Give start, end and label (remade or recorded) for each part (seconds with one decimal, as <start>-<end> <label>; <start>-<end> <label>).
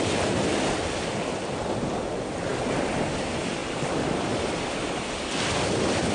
0.0-6.1 recorded